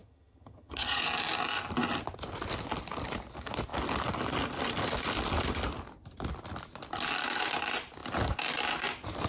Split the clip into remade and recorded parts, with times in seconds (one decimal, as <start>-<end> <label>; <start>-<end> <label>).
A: 0.0-1.0 remade; 1.0-9.3 recorded